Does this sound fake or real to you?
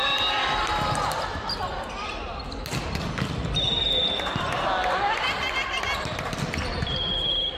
real